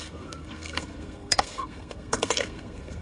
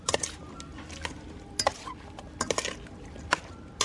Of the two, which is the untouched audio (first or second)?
second